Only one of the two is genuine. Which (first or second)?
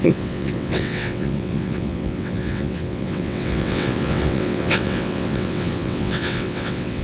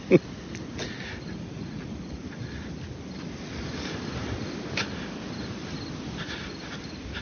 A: second